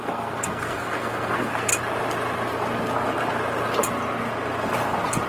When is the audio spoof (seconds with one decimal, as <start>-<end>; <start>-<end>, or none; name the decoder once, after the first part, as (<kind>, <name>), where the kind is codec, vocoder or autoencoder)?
0.0-1.7 (codec, SNAC)